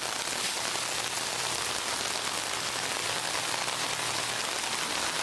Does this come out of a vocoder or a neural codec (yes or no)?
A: no